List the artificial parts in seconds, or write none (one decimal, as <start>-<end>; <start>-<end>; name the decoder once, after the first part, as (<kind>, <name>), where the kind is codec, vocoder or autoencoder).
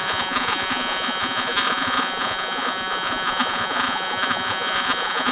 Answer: 0.0-5.3 (vocoder, Vocos)